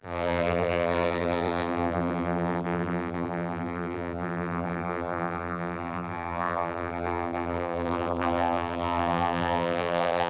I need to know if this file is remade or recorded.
remade